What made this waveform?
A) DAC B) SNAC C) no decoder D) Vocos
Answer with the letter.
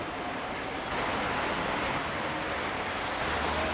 C